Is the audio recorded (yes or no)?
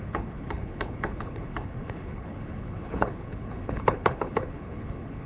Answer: no